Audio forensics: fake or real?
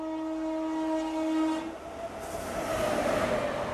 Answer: real